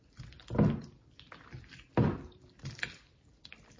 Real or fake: fake